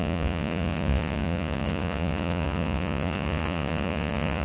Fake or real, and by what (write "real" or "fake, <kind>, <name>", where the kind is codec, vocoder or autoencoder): fake, vocoder, Vocos